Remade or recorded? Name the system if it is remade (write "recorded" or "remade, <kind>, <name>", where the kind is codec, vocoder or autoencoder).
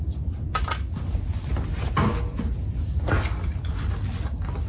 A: recorded